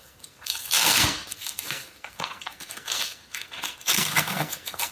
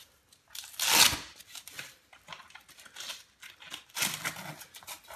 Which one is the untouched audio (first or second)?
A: second